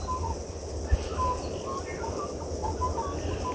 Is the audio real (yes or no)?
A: yes